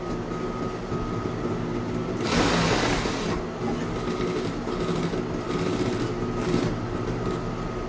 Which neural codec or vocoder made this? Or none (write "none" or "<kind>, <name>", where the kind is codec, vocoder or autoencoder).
none